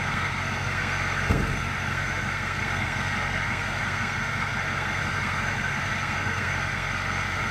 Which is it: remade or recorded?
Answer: remade